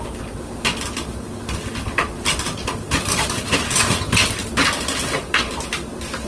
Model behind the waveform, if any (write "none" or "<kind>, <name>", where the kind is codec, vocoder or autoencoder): none